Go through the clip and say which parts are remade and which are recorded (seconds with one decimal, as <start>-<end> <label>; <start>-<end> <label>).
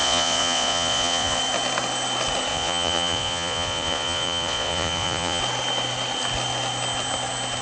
0.0-1.4 remade; 1.4-2.5 recorded; 2.5-5.4 remade; 5.4-7.6 recorded